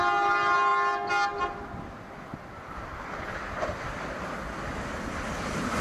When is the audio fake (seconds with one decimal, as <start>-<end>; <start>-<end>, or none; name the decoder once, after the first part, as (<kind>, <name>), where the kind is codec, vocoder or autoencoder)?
4.7-5.8 (vocoder, BigVGAN v2)